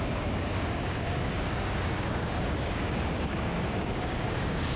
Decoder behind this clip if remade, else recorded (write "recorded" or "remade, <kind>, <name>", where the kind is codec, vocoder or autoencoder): remade, codec, DAC